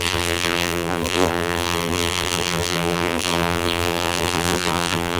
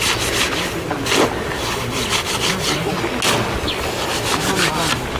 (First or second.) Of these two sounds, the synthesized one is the first